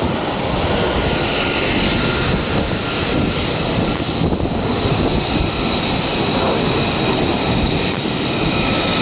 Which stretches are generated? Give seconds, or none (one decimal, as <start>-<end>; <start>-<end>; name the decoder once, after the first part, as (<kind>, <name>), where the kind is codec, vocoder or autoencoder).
none